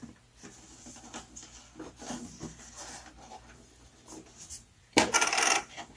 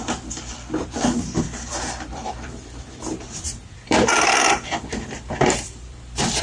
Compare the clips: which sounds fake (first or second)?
second